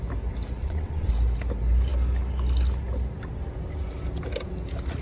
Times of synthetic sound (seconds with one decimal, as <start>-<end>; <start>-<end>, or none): 0.6-1.1